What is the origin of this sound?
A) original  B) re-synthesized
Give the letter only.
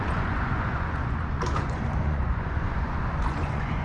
B